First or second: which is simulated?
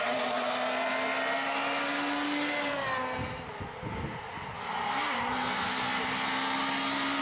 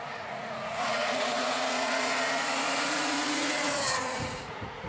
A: second